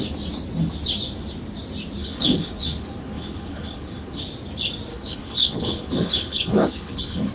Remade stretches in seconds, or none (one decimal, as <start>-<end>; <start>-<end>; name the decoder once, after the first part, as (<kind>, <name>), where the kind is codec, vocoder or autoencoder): 2.0-4.2 (codec, HILCodec); 4.9-7.3